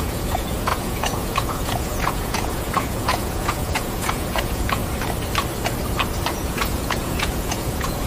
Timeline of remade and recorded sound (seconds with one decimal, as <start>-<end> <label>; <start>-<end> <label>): 0.0-4.8 remade; 4.8-6.3 recorded; 6.3-8.1 remade